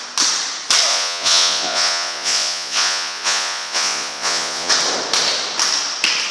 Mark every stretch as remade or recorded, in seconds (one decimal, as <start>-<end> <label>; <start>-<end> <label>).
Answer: 0.0-0.9 recorded; 0.9-4.7 remade; 4.7-6.3 recorded